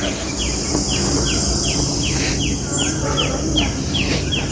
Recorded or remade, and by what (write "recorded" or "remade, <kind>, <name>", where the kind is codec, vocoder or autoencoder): recorded